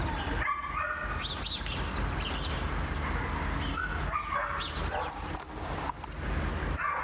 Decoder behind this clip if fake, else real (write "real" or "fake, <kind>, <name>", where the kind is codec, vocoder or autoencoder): real